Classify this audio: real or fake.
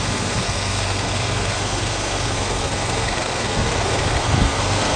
fake